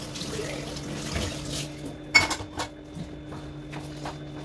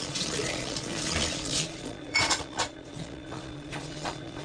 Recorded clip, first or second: first